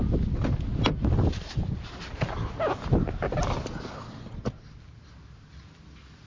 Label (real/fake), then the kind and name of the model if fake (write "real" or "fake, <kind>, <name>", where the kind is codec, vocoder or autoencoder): real